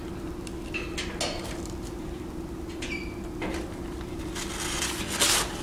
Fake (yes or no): no